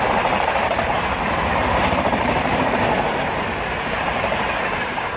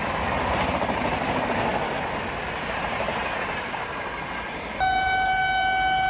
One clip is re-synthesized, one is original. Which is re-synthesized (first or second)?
first